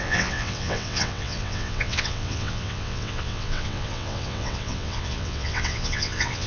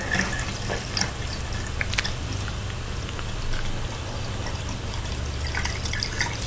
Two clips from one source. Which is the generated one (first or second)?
first